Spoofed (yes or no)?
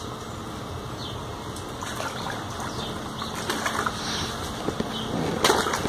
no